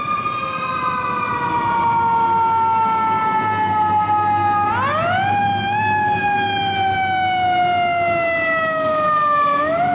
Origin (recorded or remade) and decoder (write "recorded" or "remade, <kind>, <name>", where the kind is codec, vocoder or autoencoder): recorded